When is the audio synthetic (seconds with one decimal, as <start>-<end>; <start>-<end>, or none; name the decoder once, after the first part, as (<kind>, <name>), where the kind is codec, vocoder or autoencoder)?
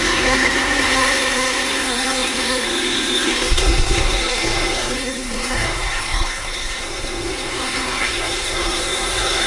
0.0-9.5 (codec, SNAC)